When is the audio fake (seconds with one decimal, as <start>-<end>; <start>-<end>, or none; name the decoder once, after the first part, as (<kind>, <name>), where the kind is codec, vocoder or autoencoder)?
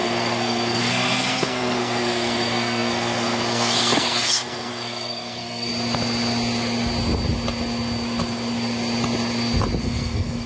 0.0-5.7 (codec, SNAC); 9.8-10.5